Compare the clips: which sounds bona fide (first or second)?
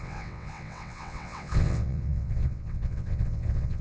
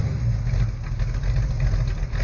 second